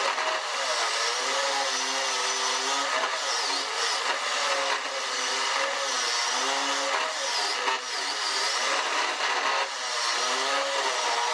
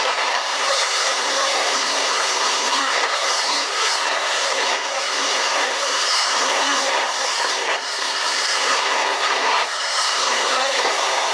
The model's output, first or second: second